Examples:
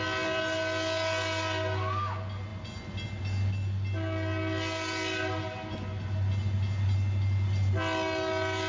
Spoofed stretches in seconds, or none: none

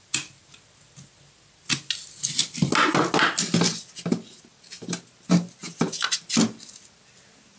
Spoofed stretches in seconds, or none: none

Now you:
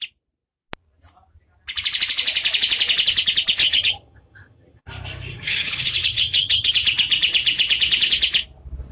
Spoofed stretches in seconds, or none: 3.6-4.8 (vocoder, HiFi-GAN); 5.3-6.7

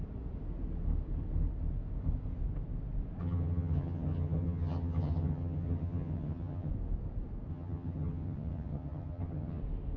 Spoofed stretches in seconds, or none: 3.2-6.7 (vocoder, HiFi-GAN); 7.5-9.6

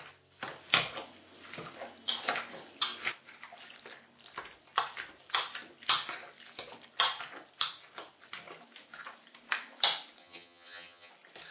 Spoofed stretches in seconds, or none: 10.2-11.1 (vocoder, HiFi-GAN)

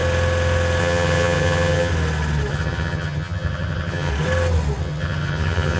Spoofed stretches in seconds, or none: 0.8-1.9 (vocoder, HiFi-GAN); 2.5-4.1; 4.8-5.8

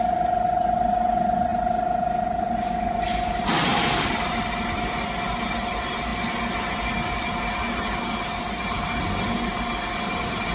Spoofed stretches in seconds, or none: none